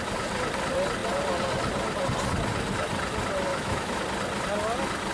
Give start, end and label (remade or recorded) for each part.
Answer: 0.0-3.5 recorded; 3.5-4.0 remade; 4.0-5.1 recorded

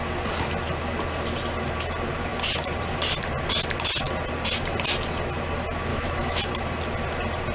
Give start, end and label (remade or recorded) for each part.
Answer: 0.0-5.9 recorded; 5.9-6.4 remade; 6.4-7.5 recorded

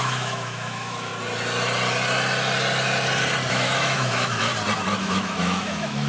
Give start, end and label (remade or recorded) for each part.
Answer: 0.0-1.1 remade; 1.1-3.5 recorded; 3.5-4.5 remade; 4.5-5.0 recorded; 5.0-6.1 remade